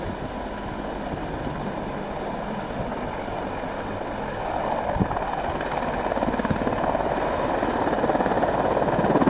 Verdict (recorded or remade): recorded